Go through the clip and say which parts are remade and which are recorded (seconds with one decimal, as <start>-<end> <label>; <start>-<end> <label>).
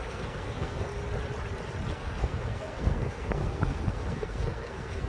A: 0.0-0.9 remade; 0.9-1.9 recorded; 1.9-5.1 remade